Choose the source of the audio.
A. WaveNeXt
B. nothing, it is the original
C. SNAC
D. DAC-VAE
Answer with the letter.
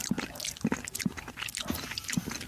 B